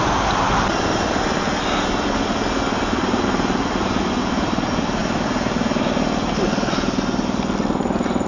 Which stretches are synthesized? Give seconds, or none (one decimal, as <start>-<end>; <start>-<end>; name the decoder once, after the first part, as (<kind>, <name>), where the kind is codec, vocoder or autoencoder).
none

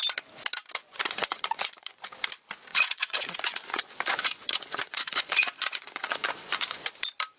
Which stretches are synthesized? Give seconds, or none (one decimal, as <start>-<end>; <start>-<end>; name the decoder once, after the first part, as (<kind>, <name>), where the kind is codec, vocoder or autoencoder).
0.8-2.0 (vocoder, Vocos); 2.7-6.8

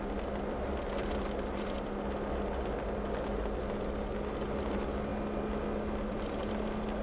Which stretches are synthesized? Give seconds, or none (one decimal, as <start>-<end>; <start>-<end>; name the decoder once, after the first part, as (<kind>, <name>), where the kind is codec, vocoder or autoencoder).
none

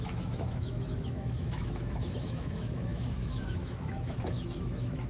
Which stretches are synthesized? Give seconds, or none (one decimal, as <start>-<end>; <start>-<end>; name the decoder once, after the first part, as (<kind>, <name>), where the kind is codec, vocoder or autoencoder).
0.0-5.1 (autoencoder, DAC-VAE)

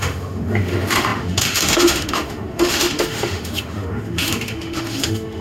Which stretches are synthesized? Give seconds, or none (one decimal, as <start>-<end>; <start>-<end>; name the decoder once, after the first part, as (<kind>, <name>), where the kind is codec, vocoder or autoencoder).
0.0-5.4 (autoencoder, DAC-VAE)

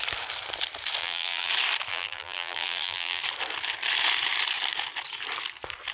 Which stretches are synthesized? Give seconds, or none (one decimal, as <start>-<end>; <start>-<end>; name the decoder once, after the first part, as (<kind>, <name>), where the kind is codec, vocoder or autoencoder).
1.0-1.5 (vocoder, BigVGAN v2); 1.9-3.2

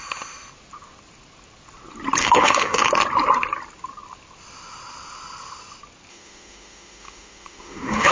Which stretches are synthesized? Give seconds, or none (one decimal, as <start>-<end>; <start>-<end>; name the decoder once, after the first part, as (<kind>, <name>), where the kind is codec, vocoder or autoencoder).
2.2-2.9 (autoencoder, DAC-VAE); 6.1-8.1